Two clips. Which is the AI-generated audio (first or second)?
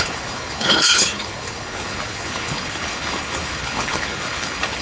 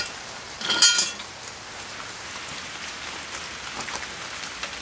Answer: first